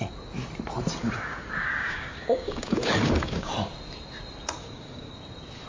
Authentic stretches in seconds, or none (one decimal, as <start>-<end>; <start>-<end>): 0.0-1.0; 3.5-4.6; 5.1-5.7